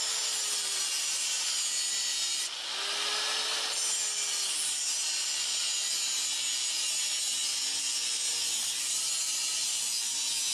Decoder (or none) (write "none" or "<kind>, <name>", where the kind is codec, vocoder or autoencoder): none